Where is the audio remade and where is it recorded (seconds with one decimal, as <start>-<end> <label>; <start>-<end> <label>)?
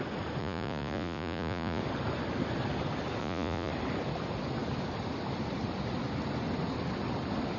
0.0-0.4 recorded; 0.4-1.8 remade; 1.8-3.2 recorded; 3.2-3.7 remade; 3.7-7.6 recorded